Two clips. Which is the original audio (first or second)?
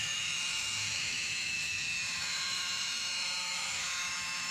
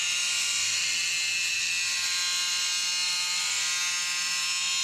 second